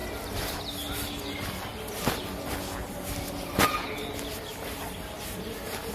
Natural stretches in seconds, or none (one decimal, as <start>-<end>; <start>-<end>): 0.0-5.9